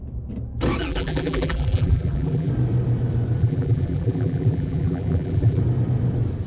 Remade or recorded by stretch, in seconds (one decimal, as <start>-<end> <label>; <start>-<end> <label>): 0.0-0.8 recorded; 0.8-2.5 remade; 2.5-3.4 recorded; 3.4-5.6 remade; 5.6-6.5 recorded